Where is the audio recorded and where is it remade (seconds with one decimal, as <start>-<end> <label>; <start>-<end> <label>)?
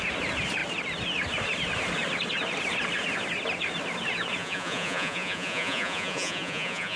0.0-4.4 recorded; 4.4-7.0 remade